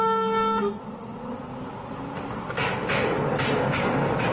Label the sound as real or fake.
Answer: real